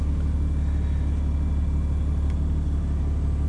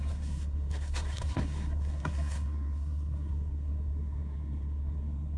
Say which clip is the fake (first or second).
second